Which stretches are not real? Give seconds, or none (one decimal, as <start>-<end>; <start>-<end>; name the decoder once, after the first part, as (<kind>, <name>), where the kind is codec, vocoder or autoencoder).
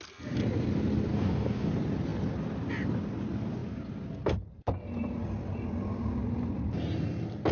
1.1-1.7 (codec, DAC)